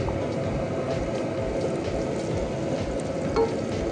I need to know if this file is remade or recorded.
recorded